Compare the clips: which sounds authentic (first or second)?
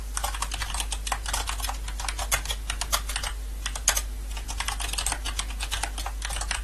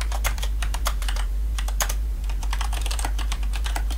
first